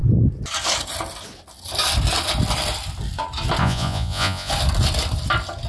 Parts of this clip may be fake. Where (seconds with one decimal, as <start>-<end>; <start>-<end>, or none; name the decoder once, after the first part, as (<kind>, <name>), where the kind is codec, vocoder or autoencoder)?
3.6-4.5 (vocoder, Vocos)